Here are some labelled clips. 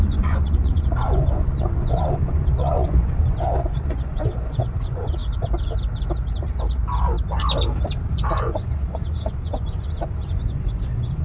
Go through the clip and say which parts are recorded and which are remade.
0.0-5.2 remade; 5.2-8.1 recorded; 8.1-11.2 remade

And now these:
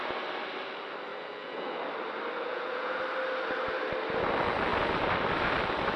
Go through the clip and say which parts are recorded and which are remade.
0.0-1.1 recorded; 1.1-1.8 remade; 1.8-2.5 recorded; 2.5-3.0 remade; 3.0-6.0 recorded

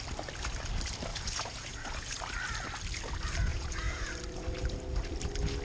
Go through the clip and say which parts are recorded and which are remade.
0.0-1.1 recorded; 1.1-2.2 remade; 2.2-3.5 recorded; 3.5-4.1 remade; 4.1-5.6 recorded

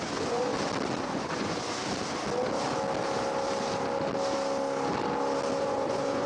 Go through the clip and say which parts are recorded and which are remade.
0.0-0.5 remade; 0.5-1.0 recorded; 1.0-1.8 remade; 1.8-5.6 recorded; 5.6-6.3 remade

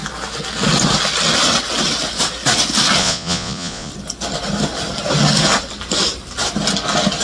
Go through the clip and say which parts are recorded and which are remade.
0.0-3.0 recorded; 3.0-3.9 remade; 3.9-7.2 recorded

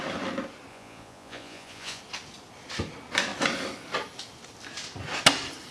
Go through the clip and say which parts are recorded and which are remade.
0.0-0.7 recorded; 0.7-2.0 remade; 2.0-5.7 recorded

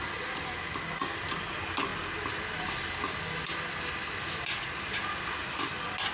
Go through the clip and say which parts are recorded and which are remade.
0.0-6.1 recorded